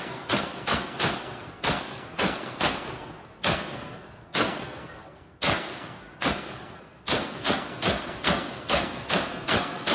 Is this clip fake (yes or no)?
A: yes